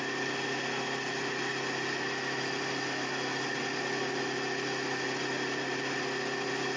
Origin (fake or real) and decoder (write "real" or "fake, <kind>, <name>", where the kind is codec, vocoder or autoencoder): real